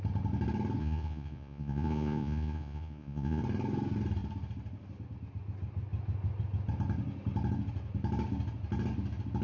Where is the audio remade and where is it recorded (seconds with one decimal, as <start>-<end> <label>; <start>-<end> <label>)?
0.0-0.8 recorded; 0.8-3.4 remade; 3.4-9.4 recorded